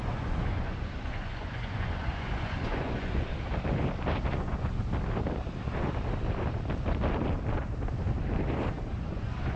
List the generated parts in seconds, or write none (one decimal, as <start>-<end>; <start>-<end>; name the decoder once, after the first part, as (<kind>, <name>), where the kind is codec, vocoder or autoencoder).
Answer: 0.0-3.3 (vocoder, Vocos); 4.3-4.8; 9.1-9.6